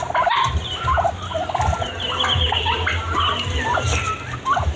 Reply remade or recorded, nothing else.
recorded